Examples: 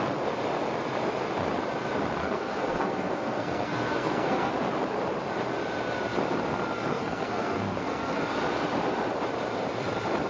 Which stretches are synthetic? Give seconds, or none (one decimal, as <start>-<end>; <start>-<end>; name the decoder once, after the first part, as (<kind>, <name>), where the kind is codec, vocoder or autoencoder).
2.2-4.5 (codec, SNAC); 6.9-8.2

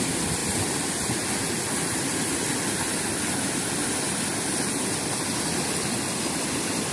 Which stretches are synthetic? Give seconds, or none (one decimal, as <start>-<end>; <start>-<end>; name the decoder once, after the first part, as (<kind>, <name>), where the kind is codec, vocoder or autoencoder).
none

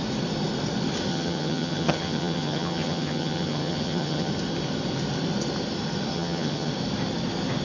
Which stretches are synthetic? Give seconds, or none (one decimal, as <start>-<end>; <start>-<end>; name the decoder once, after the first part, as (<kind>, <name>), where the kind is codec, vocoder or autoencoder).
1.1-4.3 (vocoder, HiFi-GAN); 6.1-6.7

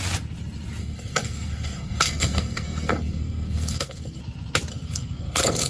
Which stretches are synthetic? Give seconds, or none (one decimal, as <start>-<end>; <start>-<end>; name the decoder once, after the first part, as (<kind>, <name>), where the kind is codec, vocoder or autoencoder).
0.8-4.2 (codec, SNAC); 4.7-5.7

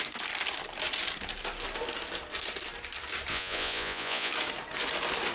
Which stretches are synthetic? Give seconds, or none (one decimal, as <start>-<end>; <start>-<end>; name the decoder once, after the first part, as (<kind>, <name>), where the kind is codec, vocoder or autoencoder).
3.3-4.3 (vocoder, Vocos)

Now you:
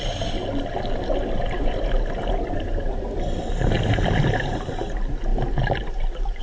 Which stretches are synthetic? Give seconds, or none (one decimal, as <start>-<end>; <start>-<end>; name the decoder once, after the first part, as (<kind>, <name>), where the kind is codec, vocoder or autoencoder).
none

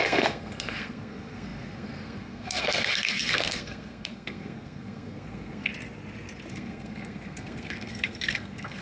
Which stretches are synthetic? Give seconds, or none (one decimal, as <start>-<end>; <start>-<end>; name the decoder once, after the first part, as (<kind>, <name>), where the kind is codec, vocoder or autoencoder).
0.0-5.7 (codec, SNAC); 6.5-8.8